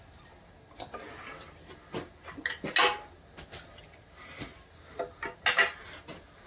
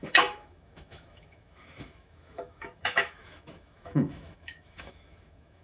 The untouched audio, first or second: first